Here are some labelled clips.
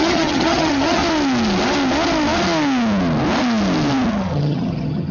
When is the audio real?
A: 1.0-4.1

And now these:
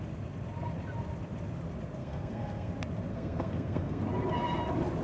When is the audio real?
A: 0.0-2.0; 2.7-3.1; 4.0-5.0

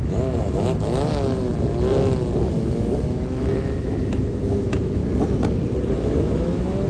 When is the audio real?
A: 1.5-2.5; 5.0-5.9

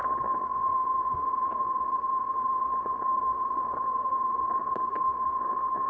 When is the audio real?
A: none

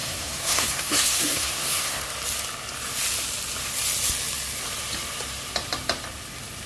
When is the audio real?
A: 2.0-6.7

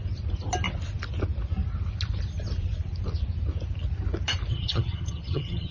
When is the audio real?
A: 0.0-4.5